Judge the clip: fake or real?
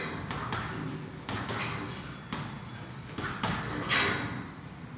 real